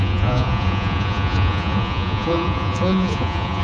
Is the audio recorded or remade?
remade